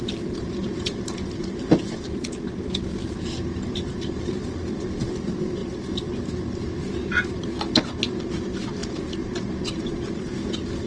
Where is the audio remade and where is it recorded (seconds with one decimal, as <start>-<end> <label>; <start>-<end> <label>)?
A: 0.0-0.4 recorded; 0.4-5.1 remade; 5.1-5.6 recorded; 5.6-6.2 remade; 6.2-10.9 recorded